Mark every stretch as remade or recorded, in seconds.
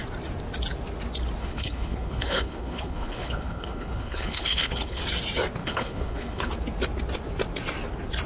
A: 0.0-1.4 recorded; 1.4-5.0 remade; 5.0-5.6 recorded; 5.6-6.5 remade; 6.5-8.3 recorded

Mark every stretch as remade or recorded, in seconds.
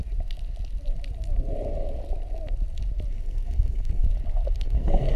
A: 0.0-3.1 recorded; 3.1-4.0 remade; 4.0-4.6 recorded; 4.6-5.2 remade